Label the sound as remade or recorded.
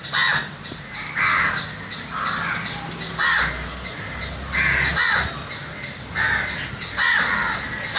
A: recorded